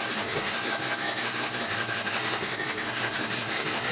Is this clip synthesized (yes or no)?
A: yes